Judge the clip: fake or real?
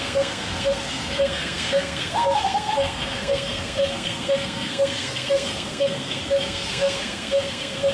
fake